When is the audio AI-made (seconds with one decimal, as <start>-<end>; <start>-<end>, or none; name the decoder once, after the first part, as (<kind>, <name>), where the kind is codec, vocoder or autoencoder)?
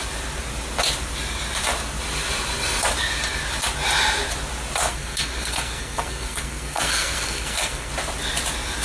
4.9-7.9 (codec, SNAC)